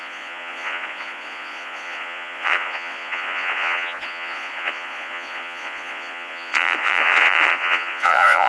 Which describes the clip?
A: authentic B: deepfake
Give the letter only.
B